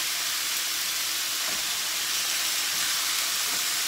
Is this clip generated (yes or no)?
no